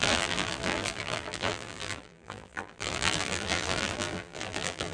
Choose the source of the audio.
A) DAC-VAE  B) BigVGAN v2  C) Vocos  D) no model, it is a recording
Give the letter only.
B